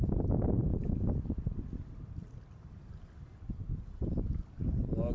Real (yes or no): yes